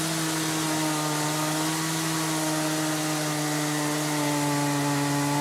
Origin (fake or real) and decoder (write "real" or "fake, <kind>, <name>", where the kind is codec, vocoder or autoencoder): real